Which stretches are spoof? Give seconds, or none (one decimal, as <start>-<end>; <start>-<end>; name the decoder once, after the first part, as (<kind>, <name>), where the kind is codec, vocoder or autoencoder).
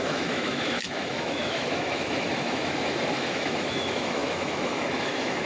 0.0-5.5 (autoencoder, DAC-VAE)